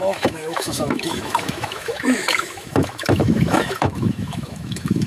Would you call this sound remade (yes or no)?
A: yes